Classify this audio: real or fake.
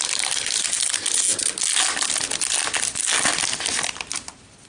real